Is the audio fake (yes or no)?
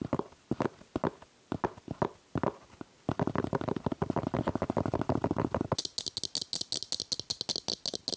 no